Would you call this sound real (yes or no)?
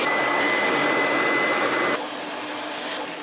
yes